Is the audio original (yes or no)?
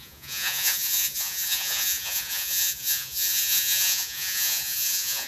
no